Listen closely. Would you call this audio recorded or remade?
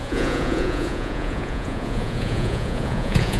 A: remade